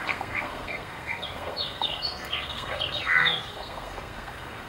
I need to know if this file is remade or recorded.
remade